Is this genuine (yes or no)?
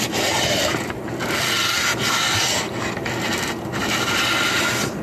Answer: yes